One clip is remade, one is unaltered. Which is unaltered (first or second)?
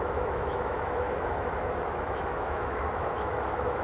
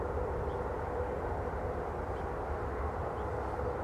second